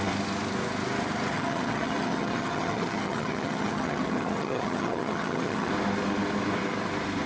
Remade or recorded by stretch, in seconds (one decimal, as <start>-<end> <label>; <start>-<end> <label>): 0.0-1.3 recorded; 1.3-5.7 remade; 5.7-7.3 recorded